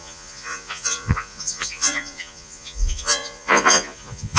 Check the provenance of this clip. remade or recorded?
remade